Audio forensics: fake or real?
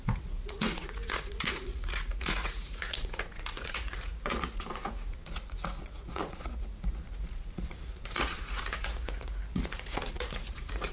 fake